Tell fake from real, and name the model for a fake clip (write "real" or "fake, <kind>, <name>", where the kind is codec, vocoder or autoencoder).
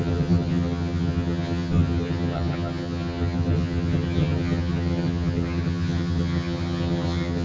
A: fake, vocoder, HiFi-GAN